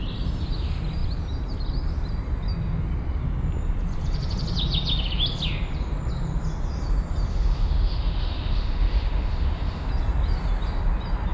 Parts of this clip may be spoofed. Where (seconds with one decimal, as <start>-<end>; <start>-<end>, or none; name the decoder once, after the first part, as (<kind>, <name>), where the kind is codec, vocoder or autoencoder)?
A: 7.3-9.9 (autoencoder, DAC-VAE)